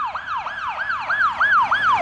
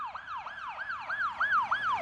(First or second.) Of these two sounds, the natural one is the first